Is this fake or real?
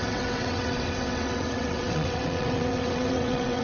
fake